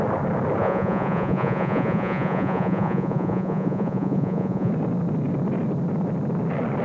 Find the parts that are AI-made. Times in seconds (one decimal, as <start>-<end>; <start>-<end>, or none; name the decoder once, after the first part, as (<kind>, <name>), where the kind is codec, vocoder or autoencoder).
0.6-4.7 (vocoder, Vocos)